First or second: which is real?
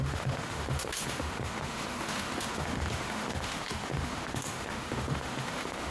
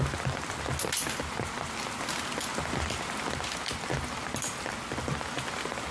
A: second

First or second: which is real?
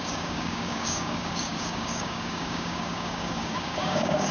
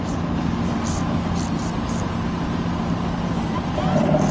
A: second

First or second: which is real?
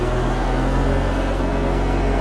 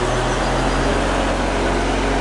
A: second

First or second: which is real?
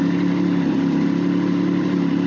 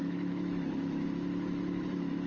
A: first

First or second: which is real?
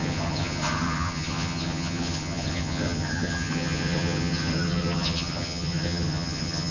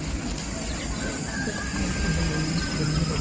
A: second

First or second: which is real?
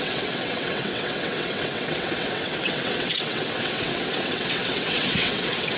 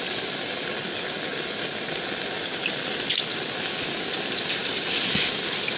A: second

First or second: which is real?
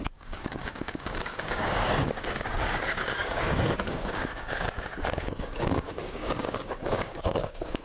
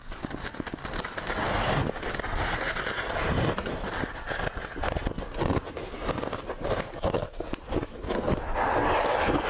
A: second